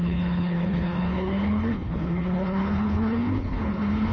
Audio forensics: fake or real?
fake